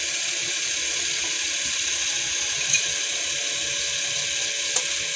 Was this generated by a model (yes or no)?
no